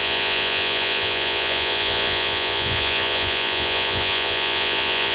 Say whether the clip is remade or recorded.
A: remade